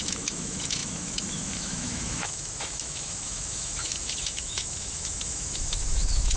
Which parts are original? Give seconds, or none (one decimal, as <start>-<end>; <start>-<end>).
none